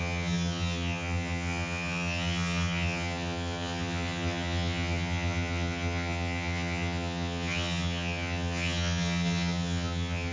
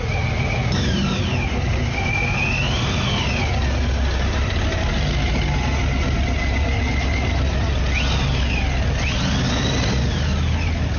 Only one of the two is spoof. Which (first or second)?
first